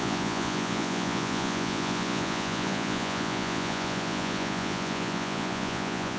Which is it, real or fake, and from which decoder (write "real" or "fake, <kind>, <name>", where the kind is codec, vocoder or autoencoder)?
fake, vocoder, Vocos